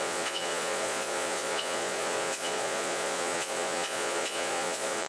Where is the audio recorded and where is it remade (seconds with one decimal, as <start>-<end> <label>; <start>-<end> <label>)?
0.0-5.1 remade